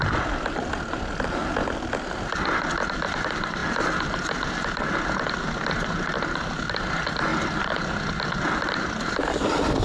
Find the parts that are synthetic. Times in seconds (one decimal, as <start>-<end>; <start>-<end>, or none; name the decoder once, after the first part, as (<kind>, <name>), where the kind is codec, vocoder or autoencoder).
none